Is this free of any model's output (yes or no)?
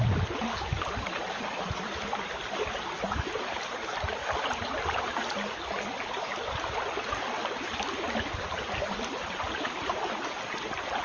yes